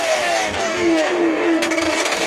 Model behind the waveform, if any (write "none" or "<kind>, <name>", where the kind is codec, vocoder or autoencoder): codec, DAC